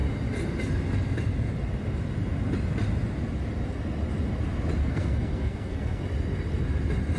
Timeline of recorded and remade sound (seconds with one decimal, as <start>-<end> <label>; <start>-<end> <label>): 0.0-4.8 recorded; 4.8-6.0 remade; 6.0-7.2 recorded